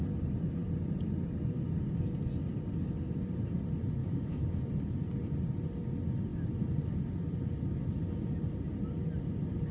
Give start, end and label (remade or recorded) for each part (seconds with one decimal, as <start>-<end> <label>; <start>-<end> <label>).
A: 0.0-4.0 recorded; 4.0-4.6 remade; 4.6-9.7 recorded